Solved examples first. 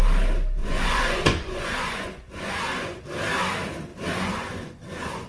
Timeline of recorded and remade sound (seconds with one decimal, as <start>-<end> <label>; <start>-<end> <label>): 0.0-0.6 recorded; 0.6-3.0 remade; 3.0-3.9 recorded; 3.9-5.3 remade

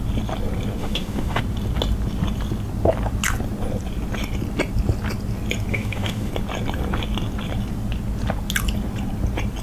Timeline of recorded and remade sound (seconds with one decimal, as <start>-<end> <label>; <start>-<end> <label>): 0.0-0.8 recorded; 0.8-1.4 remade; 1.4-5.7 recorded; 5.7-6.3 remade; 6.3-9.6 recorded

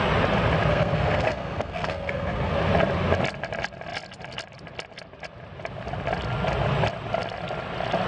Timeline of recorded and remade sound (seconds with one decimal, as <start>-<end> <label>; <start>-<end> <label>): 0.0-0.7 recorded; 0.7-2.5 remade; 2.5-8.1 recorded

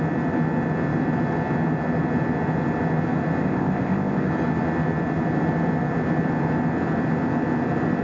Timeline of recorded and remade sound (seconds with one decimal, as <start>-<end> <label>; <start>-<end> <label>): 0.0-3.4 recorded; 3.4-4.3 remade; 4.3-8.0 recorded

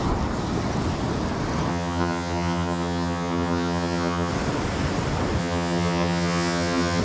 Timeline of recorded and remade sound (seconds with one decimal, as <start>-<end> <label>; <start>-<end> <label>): 0.0-1.7 recorded; 1.7-4.3 remade; 4.3-5.4 recorded; 5.4-7.0 remade